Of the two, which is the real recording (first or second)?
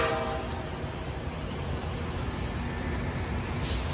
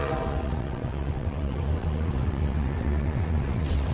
first